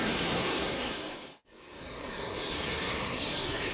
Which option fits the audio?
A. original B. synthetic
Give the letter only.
B